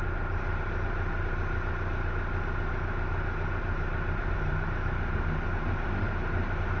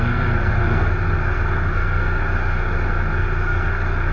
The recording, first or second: first